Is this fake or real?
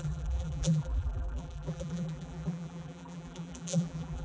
fake